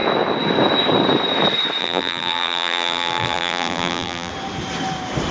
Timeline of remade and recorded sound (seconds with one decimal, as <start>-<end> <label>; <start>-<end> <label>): 0.0-1.8 recorded; 1.8-4.3 remade; 4.3-5.3 recorded